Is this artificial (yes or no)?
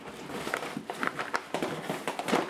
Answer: no